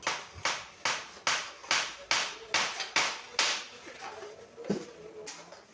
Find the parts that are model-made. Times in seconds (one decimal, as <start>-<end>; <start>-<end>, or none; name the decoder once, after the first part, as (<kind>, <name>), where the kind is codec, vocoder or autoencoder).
none